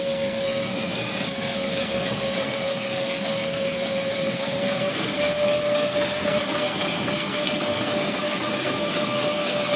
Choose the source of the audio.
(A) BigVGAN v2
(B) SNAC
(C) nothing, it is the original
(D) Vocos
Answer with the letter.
B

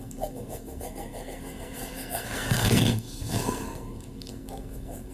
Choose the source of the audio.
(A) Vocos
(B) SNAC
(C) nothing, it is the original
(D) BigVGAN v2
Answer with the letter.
B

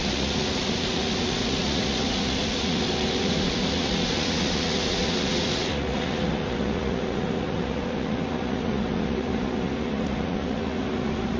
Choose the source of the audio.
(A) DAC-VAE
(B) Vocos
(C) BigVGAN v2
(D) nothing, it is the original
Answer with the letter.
B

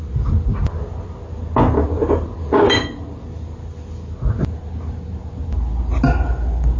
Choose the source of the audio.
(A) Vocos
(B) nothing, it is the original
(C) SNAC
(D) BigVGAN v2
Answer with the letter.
B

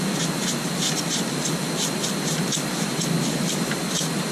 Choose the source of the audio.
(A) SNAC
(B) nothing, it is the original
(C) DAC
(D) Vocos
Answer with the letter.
B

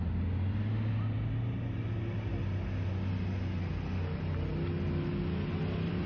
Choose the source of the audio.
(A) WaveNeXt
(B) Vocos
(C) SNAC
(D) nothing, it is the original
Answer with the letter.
D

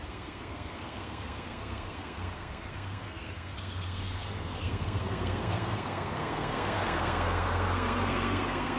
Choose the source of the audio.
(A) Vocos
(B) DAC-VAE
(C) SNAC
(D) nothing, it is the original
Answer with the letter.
C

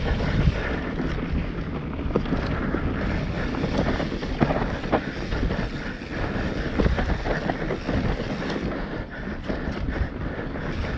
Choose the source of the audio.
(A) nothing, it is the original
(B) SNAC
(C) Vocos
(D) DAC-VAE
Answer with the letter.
A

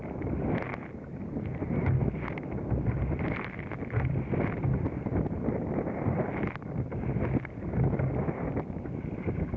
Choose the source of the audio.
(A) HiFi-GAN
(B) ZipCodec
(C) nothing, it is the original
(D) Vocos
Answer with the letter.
C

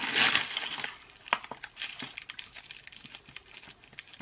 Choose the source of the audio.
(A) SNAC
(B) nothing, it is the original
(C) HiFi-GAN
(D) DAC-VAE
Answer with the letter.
B